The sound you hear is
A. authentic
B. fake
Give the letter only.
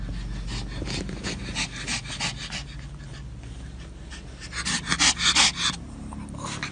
A